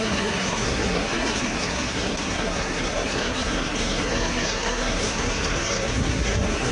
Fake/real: fake